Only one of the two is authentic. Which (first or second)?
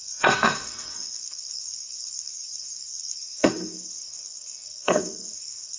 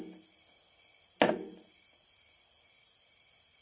second